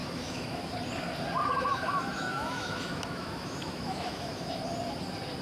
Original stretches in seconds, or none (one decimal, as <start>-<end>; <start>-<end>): 0.7-1.7; 4.6-5.4